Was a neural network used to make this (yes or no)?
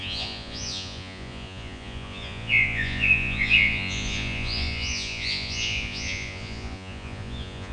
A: yes